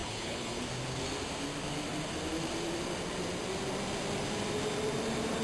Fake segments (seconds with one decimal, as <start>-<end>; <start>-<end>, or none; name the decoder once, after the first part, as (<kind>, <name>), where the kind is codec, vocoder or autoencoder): 0.0-0.6 (codec, HILCodec)